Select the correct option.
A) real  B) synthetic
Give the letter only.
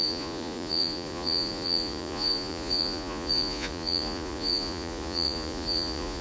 B